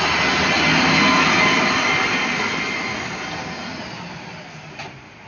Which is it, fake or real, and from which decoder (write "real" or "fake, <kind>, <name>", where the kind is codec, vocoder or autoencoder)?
real